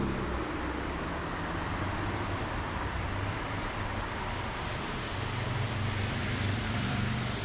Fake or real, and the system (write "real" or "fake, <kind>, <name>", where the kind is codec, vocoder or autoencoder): fake, vocoder, BigVGAN v2